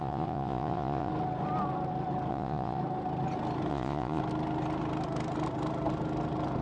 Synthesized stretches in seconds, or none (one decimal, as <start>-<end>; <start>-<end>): 0.0-1.1; 2.3-2.8; 3.7-4.2